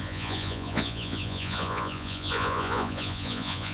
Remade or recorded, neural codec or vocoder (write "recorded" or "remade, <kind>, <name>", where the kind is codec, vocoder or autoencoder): remade, vocoder, Vocos